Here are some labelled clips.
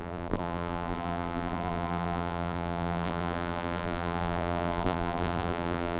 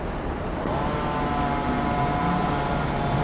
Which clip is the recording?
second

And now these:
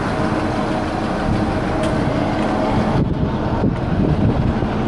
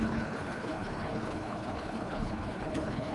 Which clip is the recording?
first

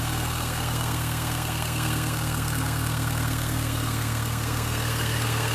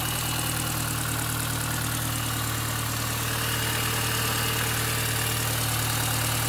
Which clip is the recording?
second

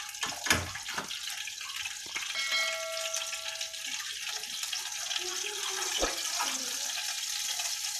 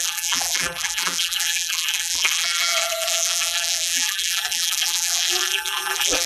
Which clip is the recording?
first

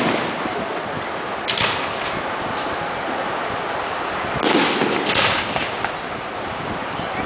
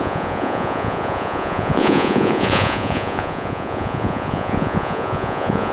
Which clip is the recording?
first